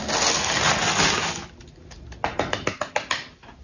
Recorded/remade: recorded